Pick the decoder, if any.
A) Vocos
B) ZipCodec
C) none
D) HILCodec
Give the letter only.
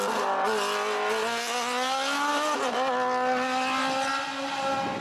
C